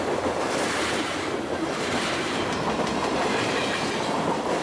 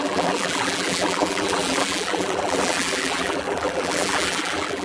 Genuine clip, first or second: first